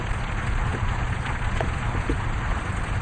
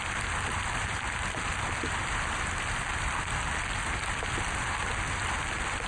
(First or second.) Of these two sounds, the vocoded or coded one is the first